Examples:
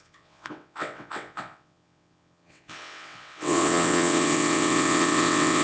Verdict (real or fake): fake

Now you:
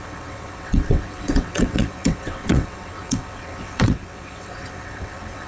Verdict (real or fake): fake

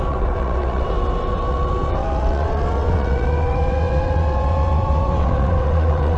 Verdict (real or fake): fake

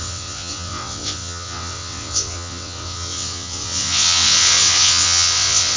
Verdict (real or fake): fake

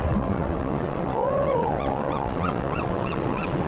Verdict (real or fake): fake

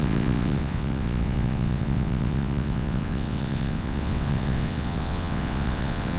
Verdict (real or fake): fake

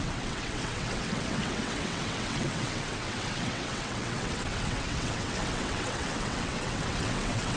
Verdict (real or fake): fake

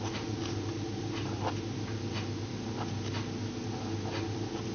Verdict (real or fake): real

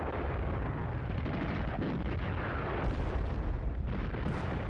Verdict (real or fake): real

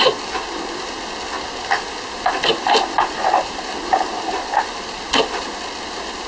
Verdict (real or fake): real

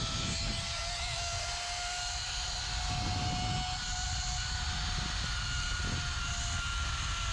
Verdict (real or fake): real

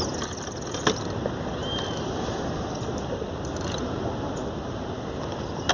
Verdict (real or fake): real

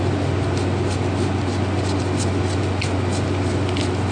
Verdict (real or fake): real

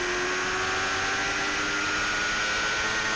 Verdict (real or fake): real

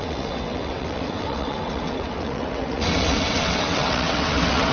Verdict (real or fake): fake